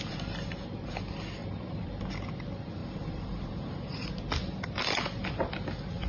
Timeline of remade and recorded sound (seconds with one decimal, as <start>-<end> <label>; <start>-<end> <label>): 0.0-1.4 recorded; 1.4-2.0 remade; 2.0-2.8 recorded; 2.8-4.1 remade; 4.1-6.1 recorded